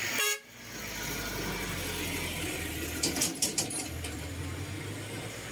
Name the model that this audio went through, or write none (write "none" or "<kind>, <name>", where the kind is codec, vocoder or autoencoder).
none